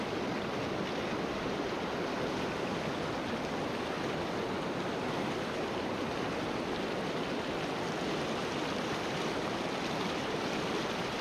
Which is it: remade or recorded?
recorded